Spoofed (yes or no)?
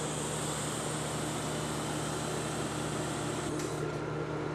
no